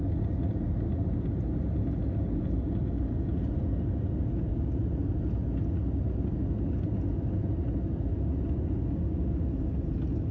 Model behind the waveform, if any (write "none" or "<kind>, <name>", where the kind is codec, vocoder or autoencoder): none